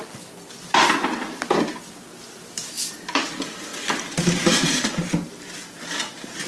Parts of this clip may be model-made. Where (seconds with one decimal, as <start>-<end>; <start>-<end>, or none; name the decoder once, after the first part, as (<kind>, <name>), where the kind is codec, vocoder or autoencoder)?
none